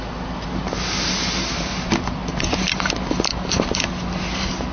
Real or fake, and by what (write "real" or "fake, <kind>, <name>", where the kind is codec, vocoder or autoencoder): real